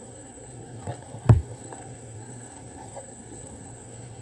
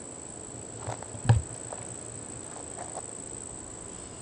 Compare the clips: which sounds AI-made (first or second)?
first